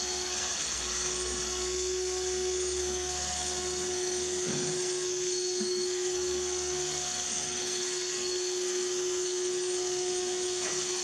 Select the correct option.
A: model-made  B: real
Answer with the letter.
A